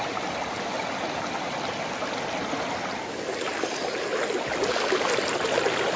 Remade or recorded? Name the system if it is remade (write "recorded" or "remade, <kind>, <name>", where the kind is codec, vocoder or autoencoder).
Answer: recorded